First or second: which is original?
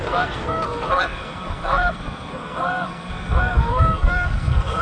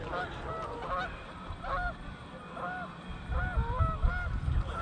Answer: second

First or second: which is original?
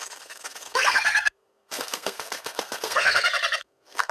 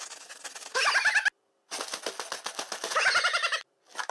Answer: second